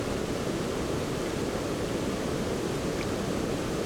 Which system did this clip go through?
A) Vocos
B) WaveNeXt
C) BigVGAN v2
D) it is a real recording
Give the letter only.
D